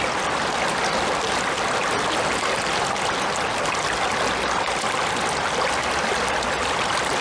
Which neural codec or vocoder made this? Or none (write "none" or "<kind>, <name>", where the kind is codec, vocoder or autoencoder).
none